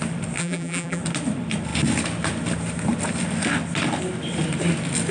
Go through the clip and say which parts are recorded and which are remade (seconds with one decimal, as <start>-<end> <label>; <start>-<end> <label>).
0.0-0.4 recorded; 0.4-1.0 remade; 1.0-5.1 recorded